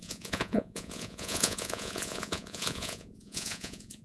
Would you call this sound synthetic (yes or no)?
yes